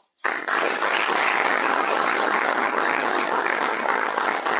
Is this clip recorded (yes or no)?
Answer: no